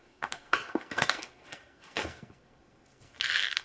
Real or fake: fake